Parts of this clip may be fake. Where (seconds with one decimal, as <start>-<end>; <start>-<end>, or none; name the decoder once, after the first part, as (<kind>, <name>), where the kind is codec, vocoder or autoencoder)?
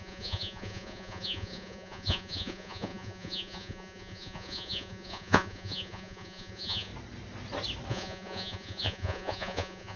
0.0-6.9 (vocoder, Vocos); 7.9-10.0